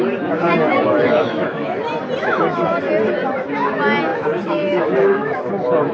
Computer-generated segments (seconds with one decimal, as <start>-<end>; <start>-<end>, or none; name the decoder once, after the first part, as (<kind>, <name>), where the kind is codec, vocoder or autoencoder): 0.7-1.8 (autoencoder, DAC-VAE); 2.2-2.8; 4.1-5.5